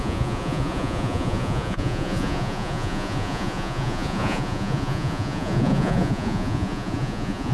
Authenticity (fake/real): fake